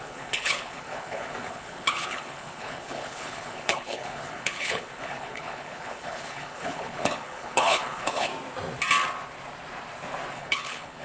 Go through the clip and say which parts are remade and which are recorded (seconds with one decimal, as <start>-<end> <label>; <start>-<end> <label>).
0.0-8.3 remade; 8.3-10.3 recorded; 10.3-11.0 remade